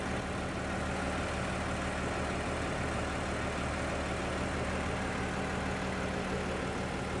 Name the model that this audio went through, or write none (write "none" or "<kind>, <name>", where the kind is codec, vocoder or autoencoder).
none